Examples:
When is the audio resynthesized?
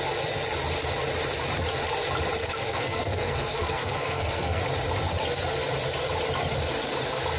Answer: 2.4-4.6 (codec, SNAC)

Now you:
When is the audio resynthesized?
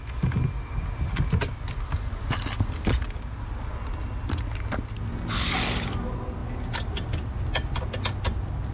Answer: none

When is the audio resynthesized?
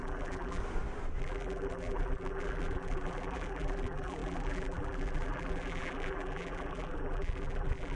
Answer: 0.0-0.6 (vocoder, BigVGAN v2); 1.2-8.0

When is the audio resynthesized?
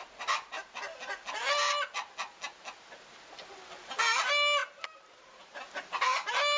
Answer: 4.6-5.6 (vocoder, BigVGAN v2)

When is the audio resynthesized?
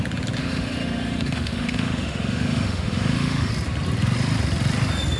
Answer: 0.4-3.5 (autoencoder, DAC-VAE)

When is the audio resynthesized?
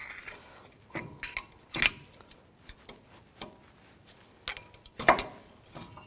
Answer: none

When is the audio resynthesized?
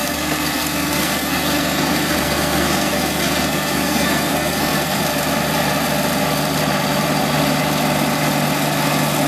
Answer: 0.0-5.0 (codec, SNAC)